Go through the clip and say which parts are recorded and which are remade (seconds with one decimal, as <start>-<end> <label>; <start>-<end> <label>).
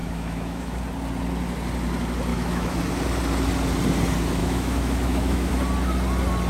0.0-0.8 remade; 0.8-2.3 recorded; 2.3-2.8 remade; 2.8-4.4 recorded; 4.4-5.5 remade; 5.5-6.5 recorded